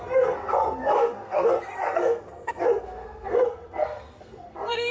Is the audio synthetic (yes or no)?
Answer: yes